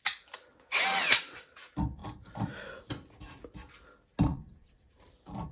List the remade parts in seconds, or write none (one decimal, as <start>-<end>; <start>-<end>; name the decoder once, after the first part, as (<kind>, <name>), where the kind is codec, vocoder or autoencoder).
0.5-1.6 (vocoder, WaveNeXt); 4.3-5.0